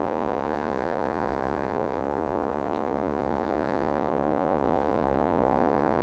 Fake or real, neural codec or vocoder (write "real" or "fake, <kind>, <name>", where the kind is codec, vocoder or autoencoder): fake, vocoder, Vocos